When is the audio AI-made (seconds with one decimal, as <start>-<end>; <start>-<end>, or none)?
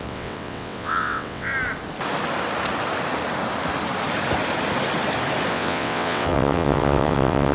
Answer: 0.0-1.5; 5.5-7.5